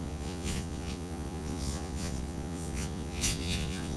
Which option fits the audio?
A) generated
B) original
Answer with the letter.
A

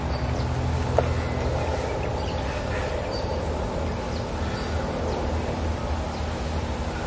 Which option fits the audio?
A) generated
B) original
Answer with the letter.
B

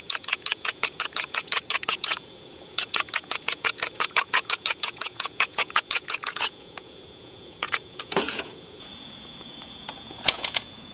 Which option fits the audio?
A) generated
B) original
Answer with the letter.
A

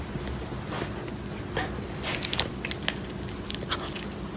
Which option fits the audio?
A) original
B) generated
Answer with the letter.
A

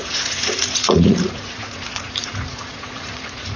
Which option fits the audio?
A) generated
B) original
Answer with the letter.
A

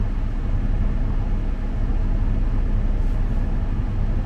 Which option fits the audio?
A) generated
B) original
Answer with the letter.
B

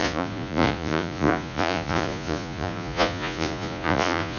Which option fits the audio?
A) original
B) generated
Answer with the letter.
B